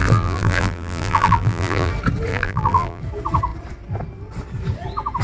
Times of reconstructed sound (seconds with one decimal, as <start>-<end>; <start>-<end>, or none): 0.0-1.9; 2.3-3.0